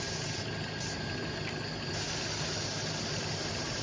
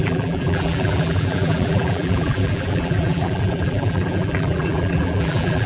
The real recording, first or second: first